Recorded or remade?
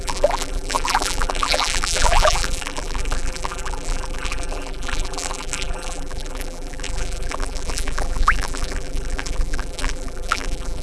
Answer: remade